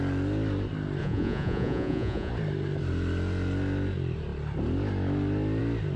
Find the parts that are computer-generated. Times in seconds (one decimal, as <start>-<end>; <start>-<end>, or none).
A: 1.0-2.3